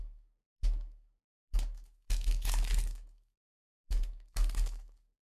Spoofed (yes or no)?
yes